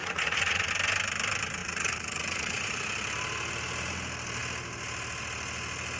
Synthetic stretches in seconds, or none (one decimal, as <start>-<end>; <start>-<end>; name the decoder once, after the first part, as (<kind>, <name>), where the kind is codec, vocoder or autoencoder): 0.0-0.7 (vocoder, Vocos); 1.6-2.8